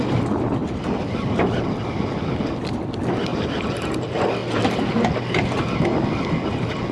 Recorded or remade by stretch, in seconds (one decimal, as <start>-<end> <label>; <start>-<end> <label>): 0.0-0.6 remade; 0.6-1.7 recorded; 1.7-4.4 remade; 4.4-6.9 recorded